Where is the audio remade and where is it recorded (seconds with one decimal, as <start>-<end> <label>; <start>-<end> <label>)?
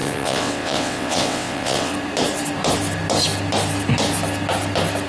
0.0-1.9 remade; 1.9-5.1 recorded